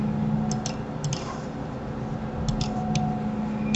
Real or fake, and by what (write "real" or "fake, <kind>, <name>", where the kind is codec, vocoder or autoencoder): real